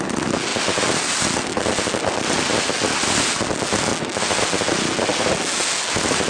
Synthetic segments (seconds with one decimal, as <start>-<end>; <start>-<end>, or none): none